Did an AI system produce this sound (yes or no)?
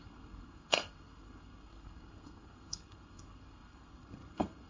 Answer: yes